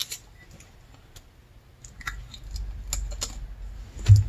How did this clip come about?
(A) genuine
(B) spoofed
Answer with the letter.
A